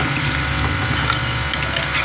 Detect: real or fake real